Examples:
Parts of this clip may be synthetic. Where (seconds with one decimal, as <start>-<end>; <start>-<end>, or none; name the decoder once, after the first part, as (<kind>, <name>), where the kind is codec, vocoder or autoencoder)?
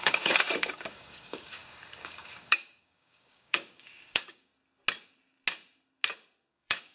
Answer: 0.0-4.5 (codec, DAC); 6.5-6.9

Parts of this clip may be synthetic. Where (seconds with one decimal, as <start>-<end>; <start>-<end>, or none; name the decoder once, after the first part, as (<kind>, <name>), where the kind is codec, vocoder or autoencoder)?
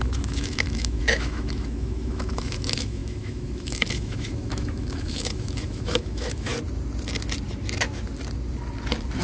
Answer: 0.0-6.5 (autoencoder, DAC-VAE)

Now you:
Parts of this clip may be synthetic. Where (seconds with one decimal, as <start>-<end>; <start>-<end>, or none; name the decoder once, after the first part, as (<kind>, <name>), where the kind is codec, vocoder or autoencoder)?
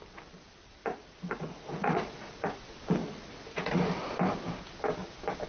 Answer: 0.8-2.6 (vocoder, Vocos); 3.0-4.0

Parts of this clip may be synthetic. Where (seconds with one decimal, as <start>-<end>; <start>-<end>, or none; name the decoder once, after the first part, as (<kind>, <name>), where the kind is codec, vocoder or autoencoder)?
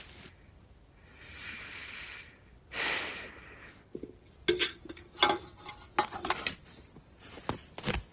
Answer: none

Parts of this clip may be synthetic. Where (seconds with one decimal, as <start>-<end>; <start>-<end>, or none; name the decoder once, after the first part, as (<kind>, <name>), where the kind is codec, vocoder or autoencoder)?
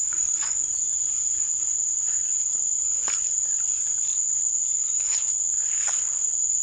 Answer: 0.0-0.7 (codec, DAC)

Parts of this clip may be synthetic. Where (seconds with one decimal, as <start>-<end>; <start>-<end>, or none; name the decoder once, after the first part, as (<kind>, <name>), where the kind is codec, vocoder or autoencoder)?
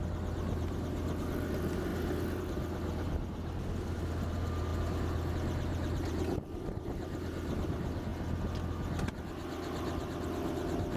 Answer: none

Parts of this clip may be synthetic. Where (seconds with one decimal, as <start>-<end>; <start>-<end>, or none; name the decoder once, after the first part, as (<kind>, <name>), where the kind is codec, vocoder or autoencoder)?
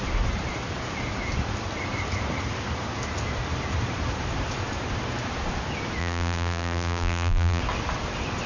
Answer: 6.0-7.6 (vocoder, BigVGAN v2)